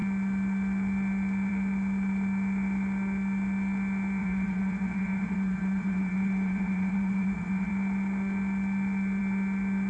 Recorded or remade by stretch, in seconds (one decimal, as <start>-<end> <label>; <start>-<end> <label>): 0.0-4.2 recorded; 4.2-7.7 remade; 7.7-9.9 recorded